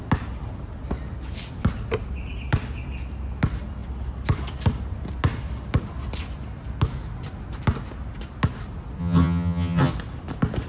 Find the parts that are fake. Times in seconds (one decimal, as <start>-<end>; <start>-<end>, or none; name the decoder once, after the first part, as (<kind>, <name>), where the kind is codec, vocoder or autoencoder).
9.0-9.9 (vocoder, HiFi-GAN)